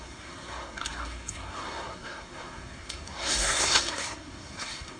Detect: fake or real fake